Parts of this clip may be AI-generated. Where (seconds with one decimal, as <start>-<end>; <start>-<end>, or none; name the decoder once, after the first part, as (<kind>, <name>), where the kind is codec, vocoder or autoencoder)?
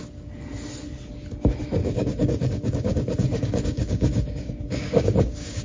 1.8-5.6 (codec, DAC)